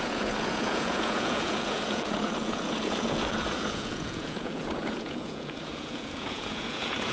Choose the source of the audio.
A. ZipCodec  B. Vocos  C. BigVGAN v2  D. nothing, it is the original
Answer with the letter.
B